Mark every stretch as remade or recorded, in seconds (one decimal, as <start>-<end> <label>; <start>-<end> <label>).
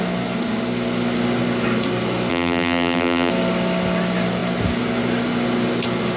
0.0-2.3 recorded; 2.3-3.3 remade; 3.3-6.2 recorded